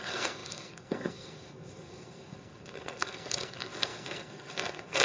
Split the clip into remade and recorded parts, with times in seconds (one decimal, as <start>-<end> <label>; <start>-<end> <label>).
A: 0.0-5.0 remade